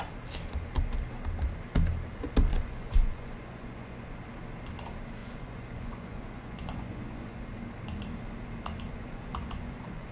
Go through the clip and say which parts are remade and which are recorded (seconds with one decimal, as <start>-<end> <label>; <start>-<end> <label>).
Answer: 0.0-2.5 recorded; 2.5-4.2 remade; 4.2-5.2 recorded; 5.2-7.5 remade; 7.5-8.9 recorded; 8.9-10.1 remade